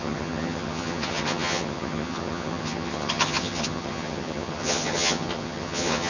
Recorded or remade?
remade